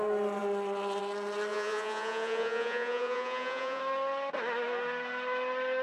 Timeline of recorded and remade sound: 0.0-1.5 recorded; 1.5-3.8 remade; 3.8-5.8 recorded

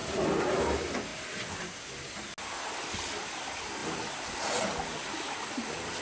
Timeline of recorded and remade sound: 0.0-0.6 remade; 0.6-3.8 recorded; 3.8-4.6 remade; 4.6-6.0 recorded